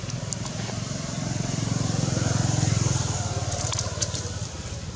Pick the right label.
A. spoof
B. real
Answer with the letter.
B